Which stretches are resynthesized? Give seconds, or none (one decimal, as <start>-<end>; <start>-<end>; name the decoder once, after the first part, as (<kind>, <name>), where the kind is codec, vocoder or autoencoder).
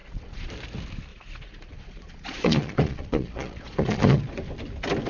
0.0-0.5 (vocoder, Vocos); 1.1-4.2